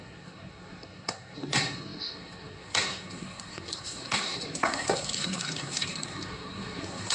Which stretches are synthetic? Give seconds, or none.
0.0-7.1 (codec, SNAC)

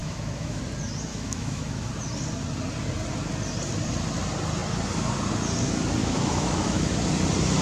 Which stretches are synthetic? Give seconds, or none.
0.0-0.6 (autoencoder, DAC-VAE); 1.1-1.9; 6.0-6.9

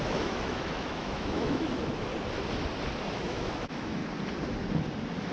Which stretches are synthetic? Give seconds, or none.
0.0-2.1 (autoencoder, DAC-VAE); 3.0-4.0

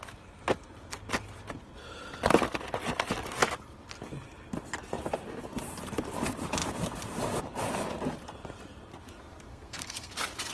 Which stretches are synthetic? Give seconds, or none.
9.5-10.1 (codec, SNAC)

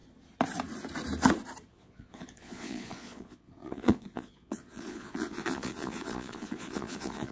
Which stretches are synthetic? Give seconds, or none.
1.7-7.3 (vocoder, Vocos)

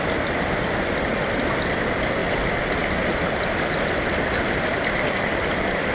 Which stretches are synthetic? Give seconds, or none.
0.0-2.2 (vocoder, BigVGAN v2); 4.5-5.9

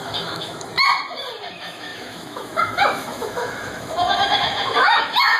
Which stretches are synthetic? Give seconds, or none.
0.0-0.7 (autoencoder, DAC-VAE); 1.5-5.4